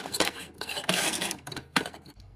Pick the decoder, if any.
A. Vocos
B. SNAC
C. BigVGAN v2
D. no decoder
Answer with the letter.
B